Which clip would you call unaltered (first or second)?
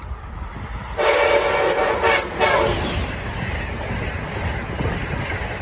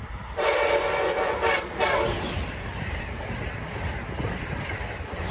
first